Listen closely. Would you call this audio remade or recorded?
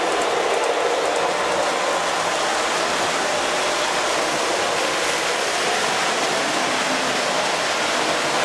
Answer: recorded